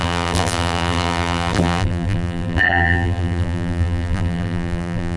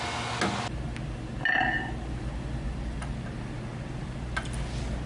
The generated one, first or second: first